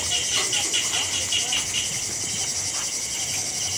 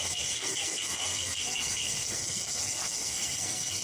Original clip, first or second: first